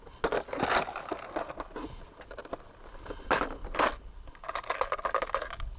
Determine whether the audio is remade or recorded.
recorded